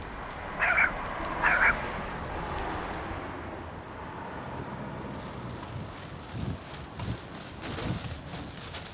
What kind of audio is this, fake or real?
real